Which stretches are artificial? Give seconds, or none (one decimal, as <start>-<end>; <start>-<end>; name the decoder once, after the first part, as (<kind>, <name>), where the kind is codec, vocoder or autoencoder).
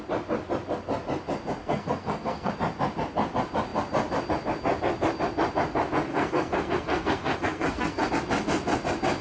1.6-2.5 (codec, SNAC); 6.1-8.1